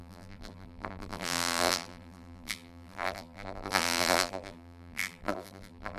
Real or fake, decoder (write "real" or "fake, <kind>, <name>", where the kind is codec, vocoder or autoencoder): fake, vocoder, BigVGAN v2